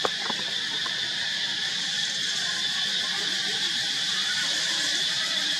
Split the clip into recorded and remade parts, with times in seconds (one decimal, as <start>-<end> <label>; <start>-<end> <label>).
0.0-3.4 recorded; 3.4-5.6 remade